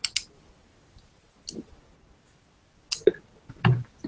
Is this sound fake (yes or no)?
no